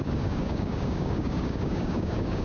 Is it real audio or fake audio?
fake